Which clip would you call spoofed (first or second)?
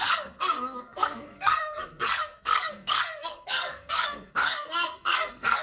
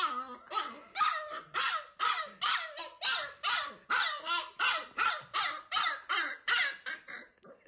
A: first